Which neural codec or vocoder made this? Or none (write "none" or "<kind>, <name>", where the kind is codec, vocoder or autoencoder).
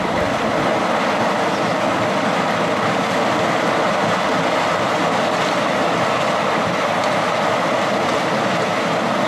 none